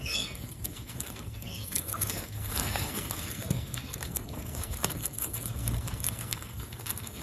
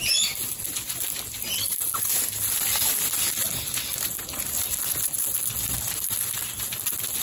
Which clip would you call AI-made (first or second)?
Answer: first